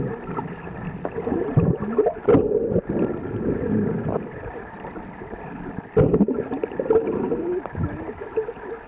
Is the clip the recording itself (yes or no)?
yes